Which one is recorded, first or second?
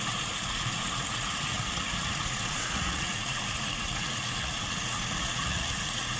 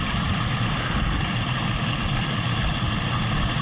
second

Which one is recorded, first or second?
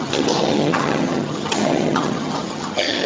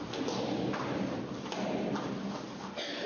second